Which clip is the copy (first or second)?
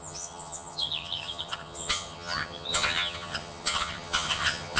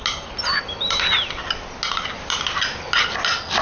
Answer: first